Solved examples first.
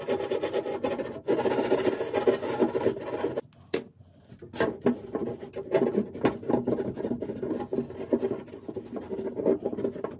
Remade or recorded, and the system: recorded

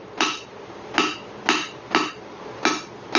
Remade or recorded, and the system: recorded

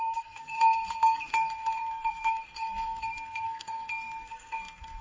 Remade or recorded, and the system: remade, codec, SNAC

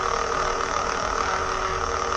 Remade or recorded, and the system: recorded